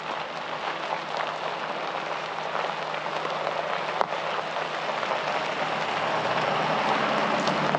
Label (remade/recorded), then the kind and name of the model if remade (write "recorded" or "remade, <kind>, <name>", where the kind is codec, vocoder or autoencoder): recorded